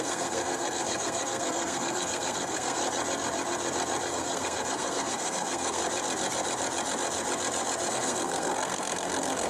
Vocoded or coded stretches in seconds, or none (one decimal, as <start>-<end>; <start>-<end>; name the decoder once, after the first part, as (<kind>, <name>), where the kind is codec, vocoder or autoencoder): 0.0-2.8 (codec, SNAC); 4.1-5.8; 7.9-9.5